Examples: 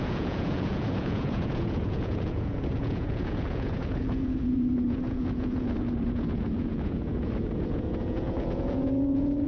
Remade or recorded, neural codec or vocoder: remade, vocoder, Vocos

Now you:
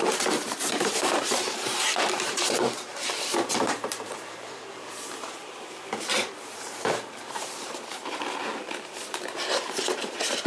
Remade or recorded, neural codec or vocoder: remade, vocoder, BigVGAN v2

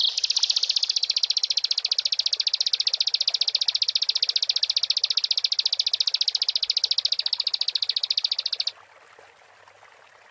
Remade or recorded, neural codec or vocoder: recorded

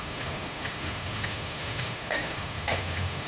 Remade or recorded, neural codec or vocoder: remade, autoencoder, DAC-VAE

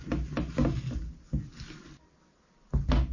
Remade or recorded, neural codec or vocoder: recorded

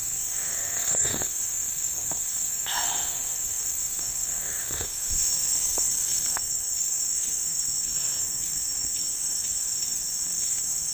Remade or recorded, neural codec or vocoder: remade, codec, SNAC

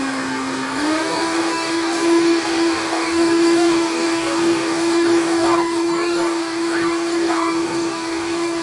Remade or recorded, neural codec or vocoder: remade, codec, DAC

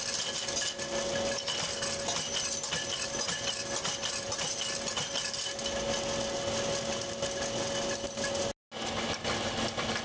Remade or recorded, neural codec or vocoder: recorded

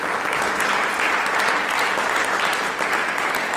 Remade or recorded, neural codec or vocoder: recorded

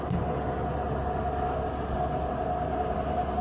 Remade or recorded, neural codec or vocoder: recorded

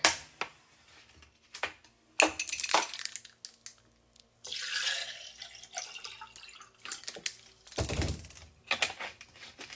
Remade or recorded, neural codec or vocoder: recorded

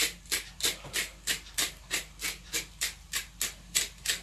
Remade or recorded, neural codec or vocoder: recorded